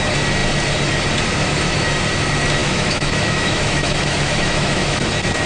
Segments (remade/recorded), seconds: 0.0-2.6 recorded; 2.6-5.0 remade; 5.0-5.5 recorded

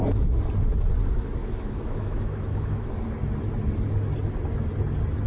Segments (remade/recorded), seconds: 0.0-1.4 recorded; 1.4-2.9 remade; 2.9-5.3 recorded

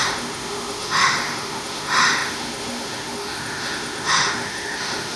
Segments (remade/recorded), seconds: 0.0-5.2 remade

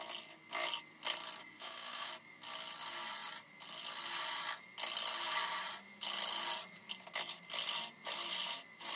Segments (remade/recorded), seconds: 0.0-1.4 recorded; 1.4-2.1 remade; 2.1-9.0 recorded

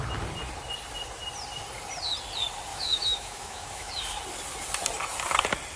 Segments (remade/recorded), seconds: 0.0-2.7 recorded; 2.7-3.9 remade; 3.9-5.8 recorded